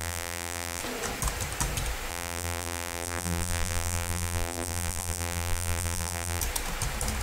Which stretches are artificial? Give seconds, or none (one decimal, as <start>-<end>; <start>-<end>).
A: 0.0-0.8; 2.1-6.4